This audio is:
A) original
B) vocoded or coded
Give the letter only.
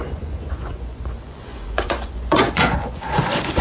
B